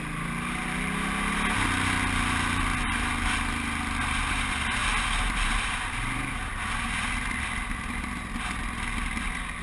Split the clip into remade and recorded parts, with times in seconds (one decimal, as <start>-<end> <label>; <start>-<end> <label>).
0.0-9.6 recorded